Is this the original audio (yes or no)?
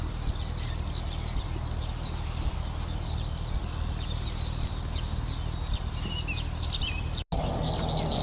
yes